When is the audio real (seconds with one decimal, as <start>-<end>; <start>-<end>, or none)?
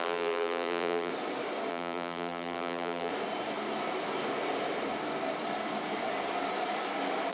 1.1-1.7; 3.1-7.3